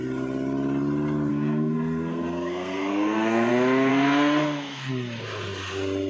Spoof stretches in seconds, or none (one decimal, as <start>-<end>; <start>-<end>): 1.3-3.5; 3.9-4.9